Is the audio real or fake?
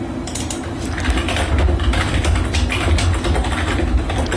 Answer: fake